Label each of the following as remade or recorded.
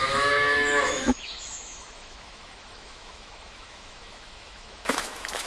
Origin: remade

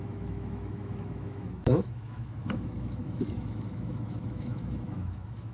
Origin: remade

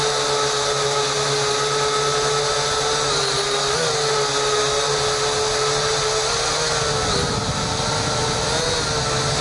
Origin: recorded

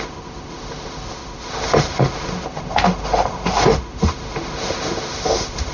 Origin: remade